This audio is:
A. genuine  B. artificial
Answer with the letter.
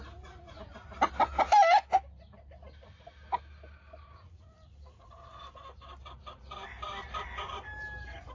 A